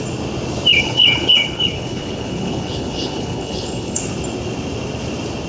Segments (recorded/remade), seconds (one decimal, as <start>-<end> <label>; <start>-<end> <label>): 0.0-0.7 recorded; 0.7-4.0 remade; 4.0-5.5 recorded